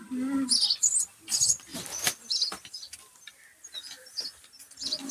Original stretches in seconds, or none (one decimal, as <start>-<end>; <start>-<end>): 0.0-5.1